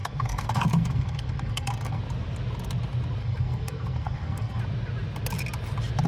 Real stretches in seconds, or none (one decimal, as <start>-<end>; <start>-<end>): 2.0-3.2; 4.6-6.1